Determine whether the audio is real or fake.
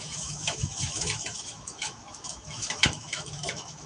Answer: fake